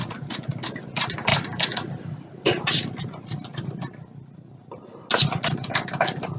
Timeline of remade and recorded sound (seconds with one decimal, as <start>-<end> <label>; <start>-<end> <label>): 0.0-6.4 recorded